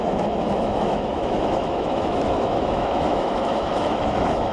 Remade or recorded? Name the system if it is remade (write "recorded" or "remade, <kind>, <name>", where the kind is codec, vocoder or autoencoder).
remade, autoencoder, DAC-VAE